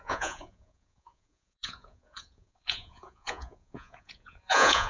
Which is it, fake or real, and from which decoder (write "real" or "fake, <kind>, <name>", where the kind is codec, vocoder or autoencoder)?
fake, vocoder, Vocos